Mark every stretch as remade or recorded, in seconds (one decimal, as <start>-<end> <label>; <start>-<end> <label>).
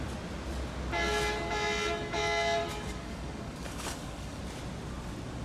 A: 0.0-2.6 recorded; 2.6-4.4 remade; 4.4-5.4 recorded